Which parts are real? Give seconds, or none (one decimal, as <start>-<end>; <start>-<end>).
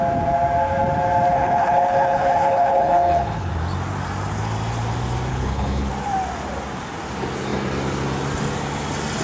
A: 0.0-1.3; 3.5-5.3; 5.9-9.2